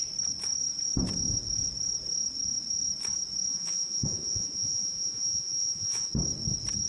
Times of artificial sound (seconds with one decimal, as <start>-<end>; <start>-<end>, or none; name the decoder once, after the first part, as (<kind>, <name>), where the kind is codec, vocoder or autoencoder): 3.5-6.1 (vocoder, Vocos)